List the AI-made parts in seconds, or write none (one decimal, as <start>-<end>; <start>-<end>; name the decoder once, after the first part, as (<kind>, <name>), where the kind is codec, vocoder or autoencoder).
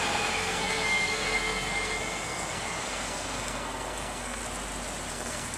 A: 0.0-4.4 (codec, SNAC); 5.1-5.6